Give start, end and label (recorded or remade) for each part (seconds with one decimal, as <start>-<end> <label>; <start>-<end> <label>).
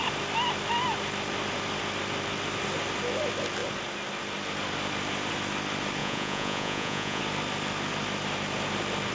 0.0-6.0 recorded; 6.0-7.2 remade; 7.2-9.1 recorded